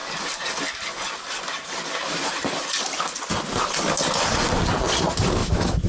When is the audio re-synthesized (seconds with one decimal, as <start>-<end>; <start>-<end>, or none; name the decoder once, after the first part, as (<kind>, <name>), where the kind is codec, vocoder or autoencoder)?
5.4-5.9 (autoencoder, DAC-VAE)